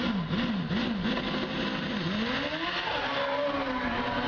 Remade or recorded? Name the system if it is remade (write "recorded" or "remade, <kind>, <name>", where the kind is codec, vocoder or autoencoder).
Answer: recorded